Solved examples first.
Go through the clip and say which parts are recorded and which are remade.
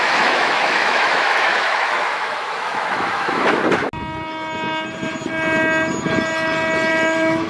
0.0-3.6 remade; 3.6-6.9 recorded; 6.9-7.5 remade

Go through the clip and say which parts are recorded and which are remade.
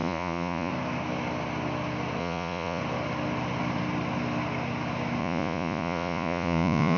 0.0-0.7 remade; 0.7-2.2 recorded; 2.2-2.8 remade; 2.8-5.2 recorded; 5.2-7.0 remade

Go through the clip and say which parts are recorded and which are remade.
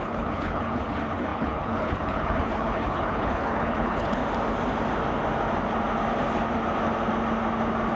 0.0-4.2 remade; 4.2-8.0 recorded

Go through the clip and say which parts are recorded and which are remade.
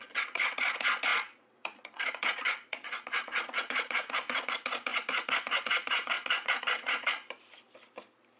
0.0-7.1 remade; 7.1-8.4 recorded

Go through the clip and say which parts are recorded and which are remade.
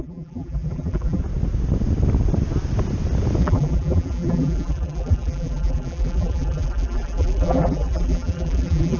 0.0-1.2 remade; 1.2-3.4 recorded; 3.4-9.0 remade